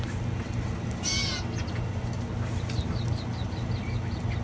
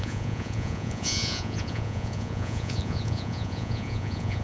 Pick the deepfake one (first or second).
second